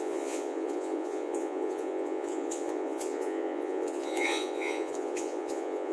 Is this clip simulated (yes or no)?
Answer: yes